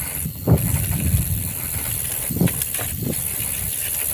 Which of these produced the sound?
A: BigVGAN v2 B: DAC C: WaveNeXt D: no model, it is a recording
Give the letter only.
D